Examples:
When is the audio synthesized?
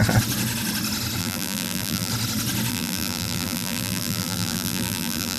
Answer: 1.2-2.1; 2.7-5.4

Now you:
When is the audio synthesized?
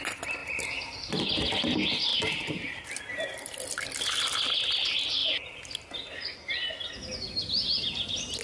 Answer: 0.4-1.3; 2.1-3.0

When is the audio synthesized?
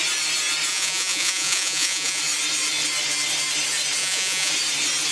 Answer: 0.7-2.2; 4.0-4.5